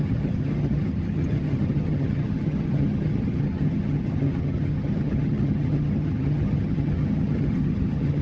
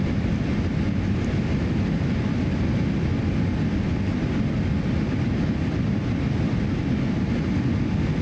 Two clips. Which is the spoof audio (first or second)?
first